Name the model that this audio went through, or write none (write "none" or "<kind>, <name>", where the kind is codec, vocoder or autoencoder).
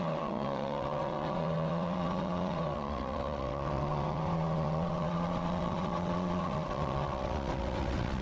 vocoder, WaveNeXt